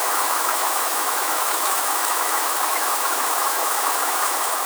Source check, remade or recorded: remade